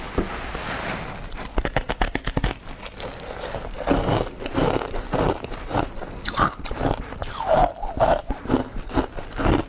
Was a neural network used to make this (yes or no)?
no